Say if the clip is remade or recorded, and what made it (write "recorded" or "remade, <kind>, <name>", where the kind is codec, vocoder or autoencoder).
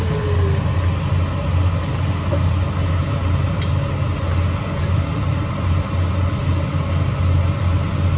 recorded